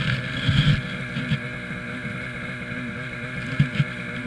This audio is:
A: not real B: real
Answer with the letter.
B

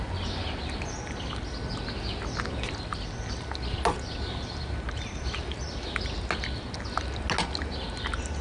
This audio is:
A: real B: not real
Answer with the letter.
A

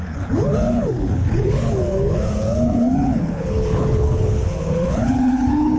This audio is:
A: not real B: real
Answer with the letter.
A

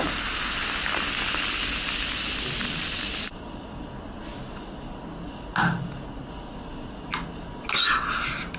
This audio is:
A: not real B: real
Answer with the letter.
B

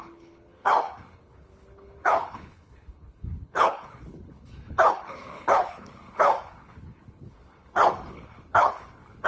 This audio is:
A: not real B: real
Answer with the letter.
A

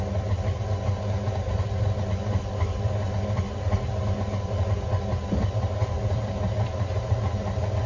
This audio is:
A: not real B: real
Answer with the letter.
B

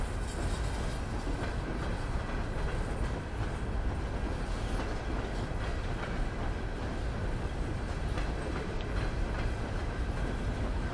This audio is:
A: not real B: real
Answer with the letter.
B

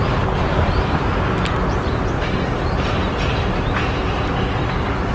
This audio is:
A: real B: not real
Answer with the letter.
A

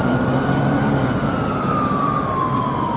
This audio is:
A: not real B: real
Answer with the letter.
B